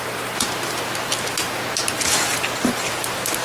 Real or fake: real